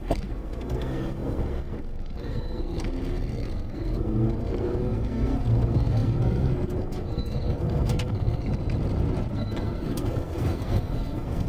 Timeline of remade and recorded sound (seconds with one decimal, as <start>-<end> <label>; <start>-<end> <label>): 0.0-8.5 remade; 8.5-9.3 recorded; 9.3-11.5 remade